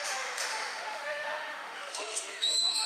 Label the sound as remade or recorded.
remade